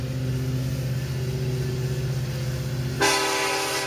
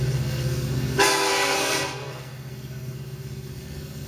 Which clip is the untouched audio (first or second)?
first